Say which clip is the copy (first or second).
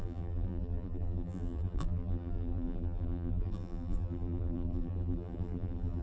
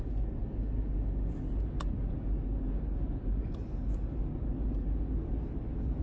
first